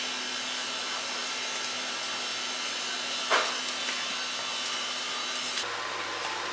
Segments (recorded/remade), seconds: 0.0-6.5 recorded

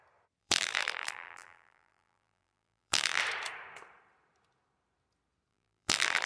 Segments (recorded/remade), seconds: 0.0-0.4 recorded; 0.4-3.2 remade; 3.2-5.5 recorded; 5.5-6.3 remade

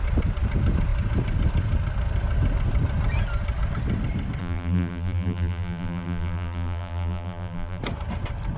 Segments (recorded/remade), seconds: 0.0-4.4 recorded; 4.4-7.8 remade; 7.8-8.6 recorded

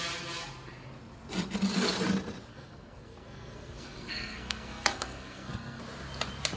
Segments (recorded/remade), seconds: 0.0-2.5 recorded; 2.5-5.8 remade; 5.8-6.6 recorded

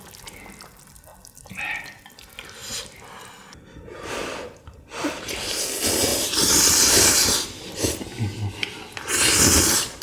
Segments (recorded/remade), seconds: 0.0-10.0 recorded

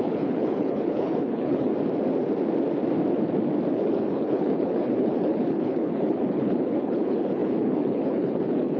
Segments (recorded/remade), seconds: 0.0-1.7 remade; 1.7-3.7 recorded; 3.7-8.8 remade

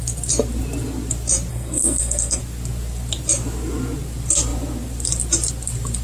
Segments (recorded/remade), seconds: 0.0-1.5 recorded; 1.5-2.4 remade; 2.4-6.0 recorded

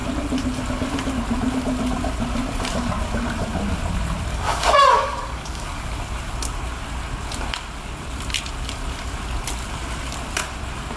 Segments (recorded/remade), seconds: 0.0-4.3 recorded; 4.3-5.9 remade; 5.9-11.0 recorded